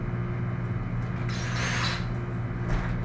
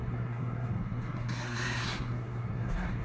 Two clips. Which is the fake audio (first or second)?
second